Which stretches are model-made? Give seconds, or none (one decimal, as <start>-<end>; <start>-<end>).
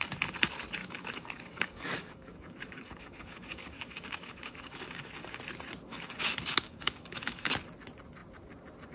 0.8-5.4; 5.9-7.5